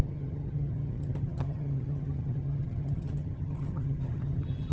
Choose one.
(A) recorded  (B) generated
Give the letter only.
B